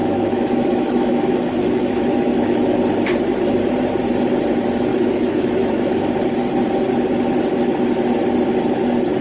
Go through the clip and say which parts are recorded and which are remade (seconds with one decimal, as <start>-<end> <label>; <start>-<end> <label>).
0.0-2.8 remade; 2.8-4.9 recorded; 4.9-5.9 remade; 5.9-9.2 recorded